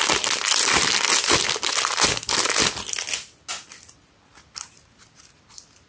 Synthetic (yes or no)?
no